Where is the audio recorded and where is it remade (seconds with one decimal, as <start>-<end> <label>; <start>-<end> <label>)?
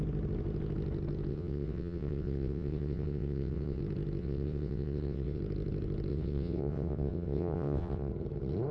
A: 0.0-1.3 recorded; 1.3-3.8 remade; 3.8-4.2 recorded; 4.2-5.4 remade; 5.4-6.1 recorded; 6.1-8.1 remade; 8.1-8.7 recorded